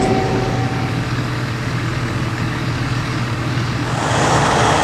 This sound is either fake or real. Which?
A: fake